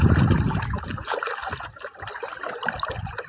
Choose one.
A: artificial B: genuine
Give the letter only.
B